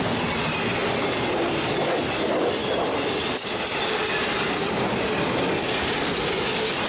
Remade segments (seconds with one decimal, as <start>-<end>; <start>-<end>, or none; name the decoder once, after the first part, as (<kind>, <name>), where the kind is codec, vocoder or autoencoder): none